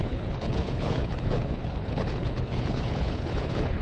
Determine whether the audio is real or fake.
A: fake